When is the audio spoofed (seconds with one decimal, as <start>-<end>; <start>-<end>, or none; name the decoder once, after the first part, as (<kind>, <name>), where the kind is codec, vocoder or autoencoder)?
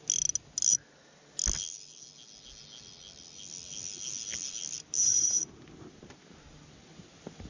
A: 5.1-6.0 (vocoder, BigVGAN v2)